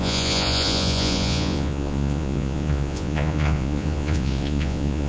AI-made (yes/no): yes